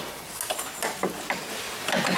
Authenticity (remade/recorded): recorded